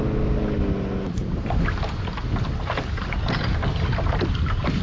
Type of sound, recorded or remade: recorded